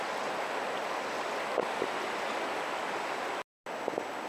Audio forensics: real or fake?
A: real